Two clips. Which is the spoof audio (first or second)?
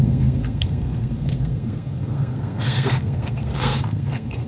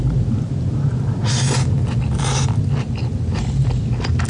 first